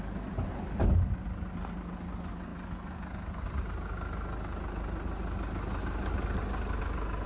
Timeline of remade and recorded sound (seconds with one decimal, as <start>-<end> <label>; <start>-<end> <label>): 0.0-7.3 recorded